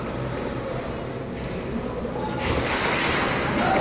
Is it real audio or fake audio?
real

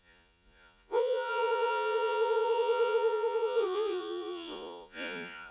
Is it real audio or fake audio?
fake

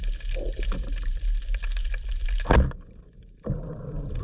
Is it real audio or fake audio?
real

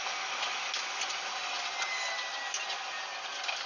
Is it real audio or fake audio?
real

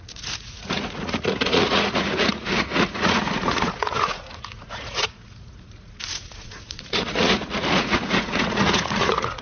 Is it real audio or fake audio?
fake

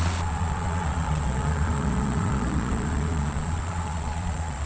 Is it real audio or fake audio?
fake